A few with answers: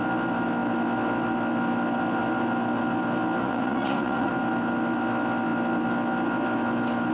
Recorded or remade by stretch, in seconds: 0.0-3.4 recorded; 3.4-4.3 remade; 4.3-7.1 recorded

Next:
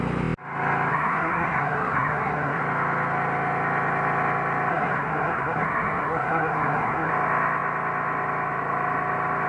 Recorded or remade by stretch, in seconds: 0.0-0.9 recorded; 0.9-2.6 remade; 2.6-4.7 recorded; 4.7-7.1 remade; 7.1-9.5 recorded

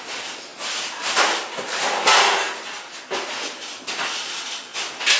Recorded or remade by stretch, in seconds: 0.0-5.2 recorded

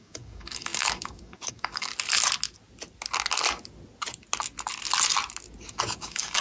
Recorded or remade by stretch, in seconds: 0.0-1.9 remade; 1.9-5.7 recorded; 5.7-6.4 remade

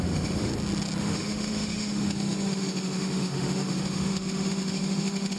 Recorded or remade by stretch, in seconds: 0.0-0.5 remade; 0.5-1.0 recorded; 1.0-5.4 remade